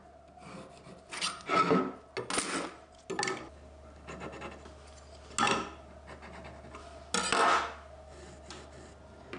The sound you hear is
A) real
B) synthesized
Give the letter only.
A